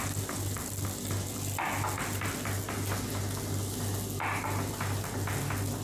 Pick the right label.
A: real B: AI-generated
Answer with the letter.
A